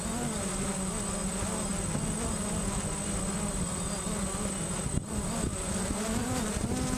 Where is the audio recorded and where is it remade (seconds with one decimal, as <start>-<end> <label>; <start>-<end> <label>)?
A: 0.0-7.0 recorded